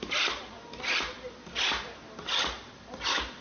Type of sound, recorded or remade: recorded